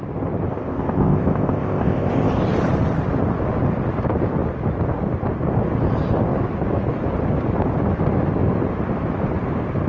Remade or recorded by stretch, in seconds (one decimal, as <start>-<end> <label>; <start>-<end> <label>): 0.0-0.5 recorded; 0.5-2.3 remade; 2.3-9.9 recorded